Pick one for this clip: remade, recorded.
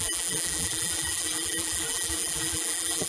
remade